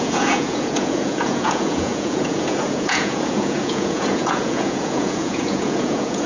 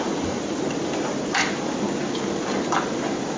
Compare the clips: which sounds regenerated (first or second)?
first